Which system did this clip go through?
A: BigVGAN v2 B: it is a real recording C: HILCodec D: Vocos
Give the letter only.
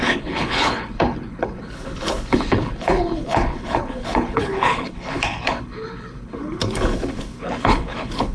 C